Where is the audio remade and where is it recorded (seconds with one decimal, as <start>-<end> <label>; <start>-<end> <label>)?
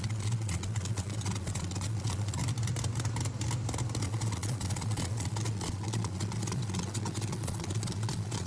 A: 0.0-2.4 remade; 2.4-4.0 recorded; 4.0-8.5 remade